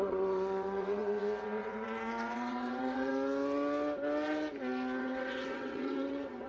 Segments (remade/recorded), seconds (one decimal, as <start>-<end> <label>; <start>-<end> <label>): 0.0-3.1 remade; 3.1-5.0 recorded; 5.0-6.5 remade